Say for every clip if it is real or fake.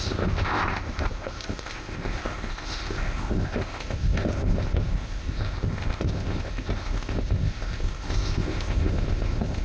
fake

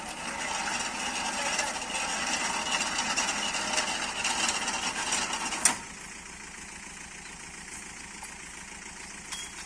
real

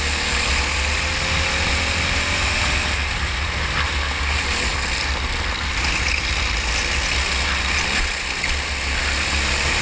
real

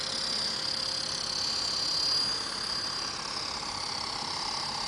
real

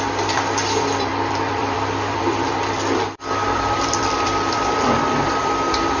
fake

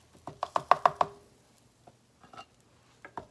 real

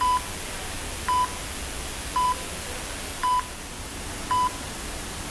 real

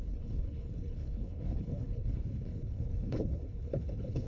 fake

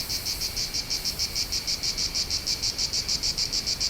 fake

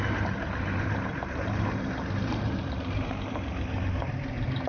fake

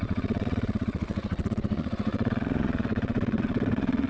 fake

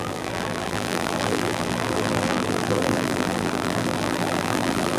fake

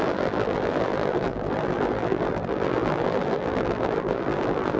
fake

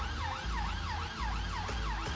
real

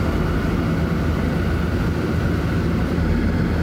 real